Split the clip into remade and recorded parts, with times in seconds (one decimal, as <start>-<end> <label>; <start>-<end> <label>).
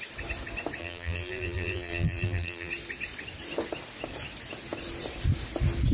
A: 0.0-0.8 recorded; 0.8-2.7 remade; 2.7-5.9 recorded